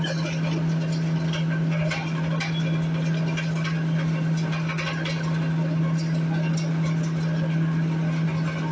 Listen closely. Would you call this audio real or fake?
real